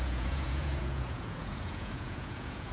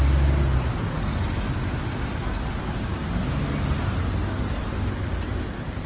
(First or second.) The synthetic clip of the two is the first